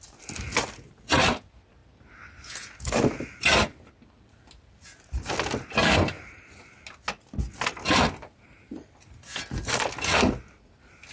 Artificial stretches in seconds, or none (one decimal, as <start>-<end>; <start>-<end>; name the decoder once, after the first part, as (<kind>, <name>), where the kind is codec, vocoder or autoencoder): none